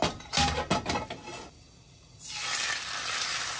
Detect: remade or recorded recorded